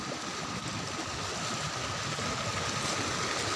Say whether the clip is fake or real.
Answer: real